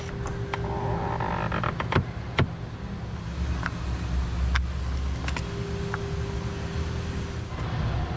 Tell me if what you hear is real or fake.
real